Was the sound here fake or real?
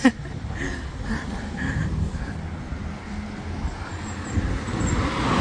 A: real